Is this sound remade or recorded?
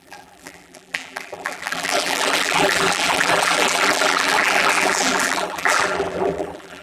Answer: remade